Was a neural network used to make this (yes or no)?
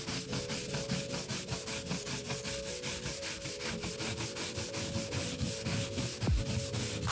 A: no